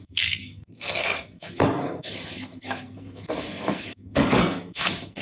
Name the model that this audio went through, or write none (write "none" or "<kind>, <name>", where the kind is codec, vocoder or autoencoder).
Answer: codec, SNAC